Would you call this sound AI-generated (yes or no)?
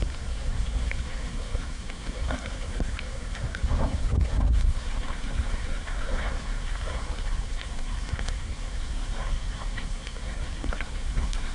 yes